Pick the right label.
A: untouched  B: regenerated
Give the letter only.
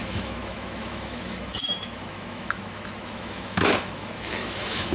B